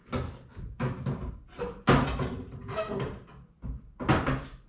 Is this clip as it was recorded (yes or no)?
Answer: yes